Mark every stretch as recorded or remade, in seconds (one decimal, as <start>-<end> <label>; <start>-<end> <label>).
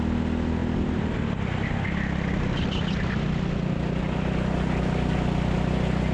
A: 0.0-6.1 recorded